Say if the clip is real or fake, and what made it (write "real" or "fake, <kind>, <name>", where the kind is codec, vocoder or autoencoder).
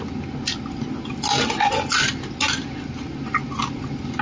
real